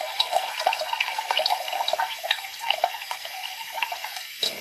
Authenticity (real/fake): fake